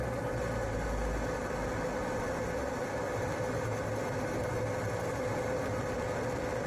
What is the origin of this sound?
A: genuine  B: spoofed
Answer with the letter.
A